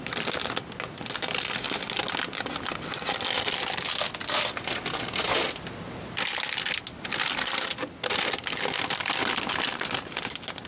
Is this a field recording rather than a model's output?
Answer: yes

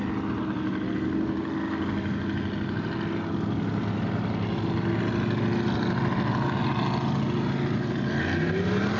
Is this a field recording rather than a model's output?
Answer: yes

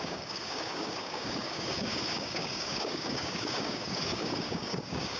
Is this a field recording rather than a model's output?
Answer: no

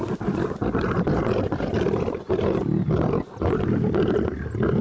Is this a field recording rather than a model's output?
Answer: yes